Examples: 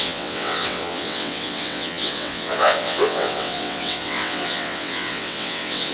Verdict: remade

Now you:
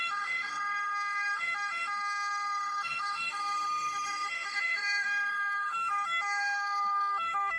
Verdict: remade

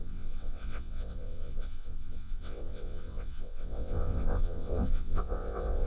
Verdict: remade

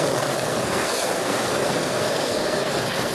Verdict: remade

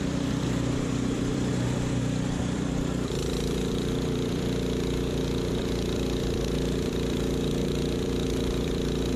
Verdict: remade